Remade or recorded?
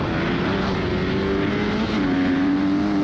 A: recorded